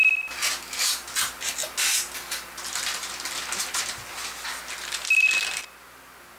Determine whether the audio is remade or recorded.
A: recorded